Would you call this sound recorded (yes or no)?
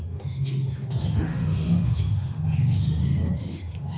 no